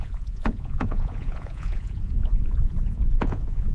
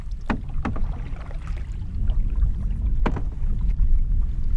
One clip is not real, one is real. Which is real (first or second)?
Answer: second